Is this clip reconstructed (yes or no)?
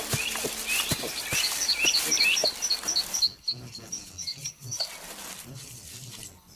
yes